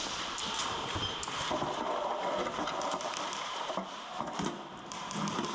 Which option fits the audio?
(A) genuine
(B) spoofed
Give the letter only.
A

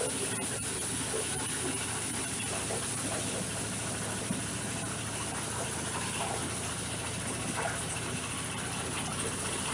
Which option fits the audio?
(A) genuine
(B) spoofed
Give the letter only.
A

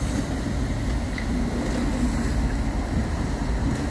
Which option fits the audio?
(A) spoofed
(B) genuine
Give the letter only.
B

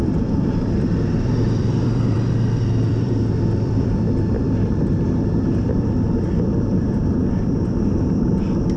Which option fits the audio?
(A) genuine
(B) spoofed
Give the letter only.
B